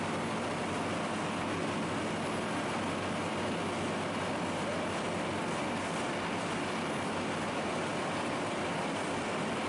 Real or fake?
real